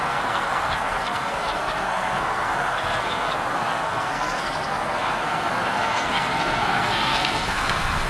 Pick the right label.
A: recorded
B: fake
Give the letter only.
B